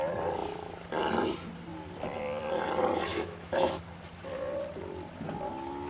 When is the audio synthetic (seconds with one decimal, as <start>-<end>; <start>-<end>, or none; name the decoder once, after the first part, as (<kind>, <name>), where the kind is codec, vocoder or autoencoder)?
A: 3.1-3.8 (autoencoder, DAC-VAE)